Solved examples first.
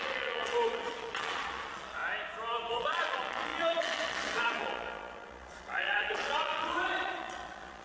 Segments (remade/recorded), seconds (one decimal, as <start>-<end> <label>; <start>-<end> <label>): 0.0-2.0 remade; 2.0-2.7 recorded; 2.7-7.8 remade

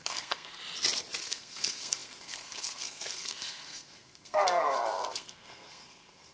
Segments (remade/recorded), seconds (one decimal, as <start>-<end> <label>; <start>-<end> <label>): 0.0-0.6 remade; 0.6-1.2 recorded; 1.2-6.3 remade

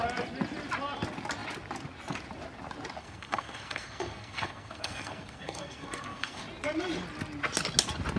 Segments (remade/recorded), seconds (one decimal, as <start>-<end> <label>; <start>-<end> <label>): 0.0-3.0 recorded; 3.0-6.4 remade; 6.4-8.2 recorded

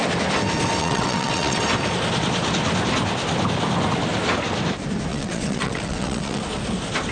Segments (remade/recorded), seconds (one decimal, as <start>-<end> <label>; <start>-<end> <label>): 0.0-0.8 recorded; 0.8-1.6 remade; 1.6-5.1 recorded; 5.1-6.4 remade; 6.4-7.1 recorded